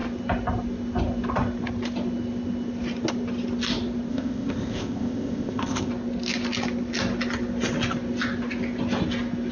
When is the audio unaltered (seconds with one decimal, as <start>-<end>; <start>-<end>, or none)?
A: 0.0-4.1; 5.9-9.5

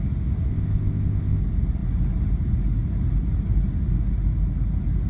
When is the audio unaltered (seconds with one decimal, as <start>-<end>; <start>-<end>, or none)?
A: 0.0-0.5; 1.4-5.1

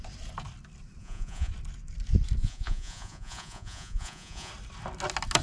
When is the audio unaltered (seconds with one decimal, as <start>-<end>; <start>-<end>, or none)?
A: 0.0-1.0; 1.5-2.4; 4.5-5.4

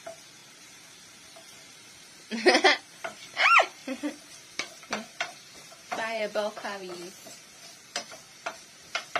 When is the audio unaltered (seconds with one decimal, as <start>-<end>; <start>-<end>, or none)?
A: none

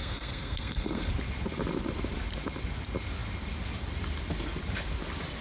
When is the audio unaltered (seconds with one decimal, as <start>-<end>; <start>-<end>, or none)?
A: 1.1-5.4